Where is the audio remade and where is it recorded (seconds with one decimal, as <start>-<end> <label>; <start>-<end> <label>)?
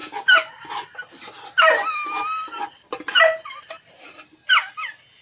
0.0-5.2 recorded